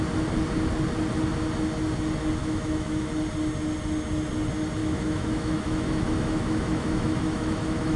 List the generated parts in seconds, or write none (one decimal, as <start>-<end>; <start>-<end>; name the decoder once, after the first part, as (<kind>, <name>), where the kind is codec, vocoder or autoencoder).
2.4-3.1 (autoencoder, DAC-VAE); 4.8-8.0